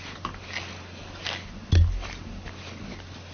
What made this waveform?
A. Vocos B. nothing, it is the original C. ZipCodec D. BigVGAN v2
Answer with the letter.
B